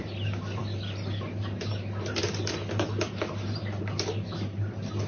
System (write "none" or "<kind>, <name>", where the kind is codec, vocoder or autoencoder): none